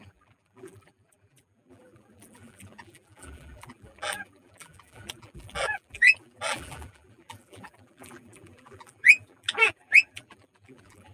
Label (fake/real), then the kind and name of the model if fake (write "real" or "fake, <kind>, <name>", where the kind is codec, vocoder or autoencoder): fake, vocoder, BigVGAN v2